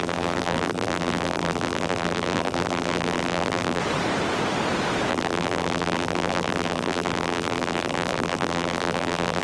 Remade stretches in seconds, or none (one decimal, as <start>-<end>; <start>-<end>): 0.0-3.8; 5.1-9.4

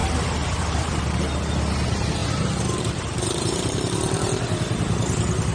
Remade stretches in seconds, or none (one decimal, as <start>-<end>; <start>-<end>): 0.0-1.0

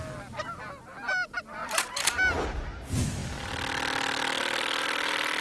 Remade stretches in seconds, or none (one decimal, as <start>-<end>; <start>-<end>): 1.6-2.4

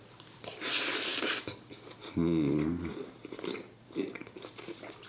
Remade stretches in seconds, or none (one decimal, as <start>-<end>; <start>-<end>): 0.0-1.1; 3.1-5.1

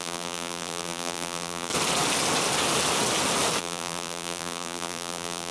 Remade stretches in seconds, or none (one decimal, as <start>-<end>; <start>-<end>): 0.0-1.7; 3.6-5.5

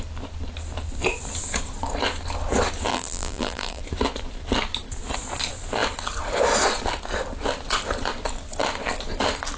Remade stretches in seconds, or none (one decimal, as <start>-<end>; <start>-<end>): 2.9-3.8

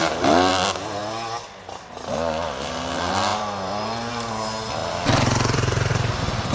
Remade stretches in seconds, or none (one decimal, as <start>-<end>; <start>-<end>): 3.3-4.1; 4.8-5.9